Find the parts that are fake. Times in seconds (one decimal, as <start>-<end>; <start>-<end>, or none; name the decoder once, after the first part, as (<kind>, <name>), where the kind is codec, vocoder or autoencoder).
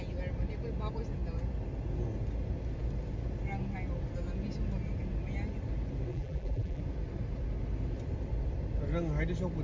6.1-6.8 (vocoder, BigVGAN v2)